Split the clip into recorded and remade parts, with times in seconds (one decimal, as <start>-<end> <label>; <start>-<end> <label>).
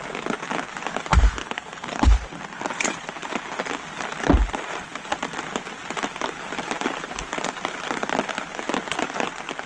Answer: 0.0-1.4 recorded; 1.4-2.1 remade; 2.1-9.7 recorded